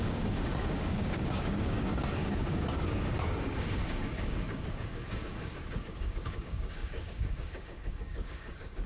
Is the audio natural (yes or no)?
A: no